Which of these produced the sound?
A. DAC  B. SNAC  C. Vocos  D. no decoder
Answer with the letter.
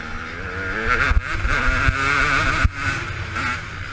D